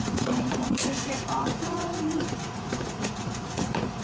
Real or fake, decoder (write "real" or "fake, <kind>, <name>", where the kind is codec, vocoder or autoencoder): fake, vocoder, Vocos